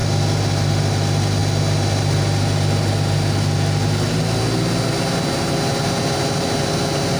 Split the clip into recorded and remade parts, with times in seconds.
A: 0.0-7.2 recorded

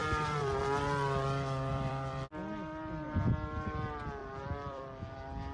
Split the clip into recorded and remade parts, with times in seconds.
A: 0.0-0.6 remade; 0.6-1.7 recorded; 1.7-3.3 remade; 3.3-4.2 recorded; 4.2-4.8 remade; 4.8-5.5 recorded